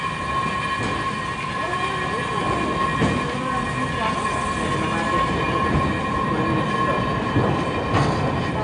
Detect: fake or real real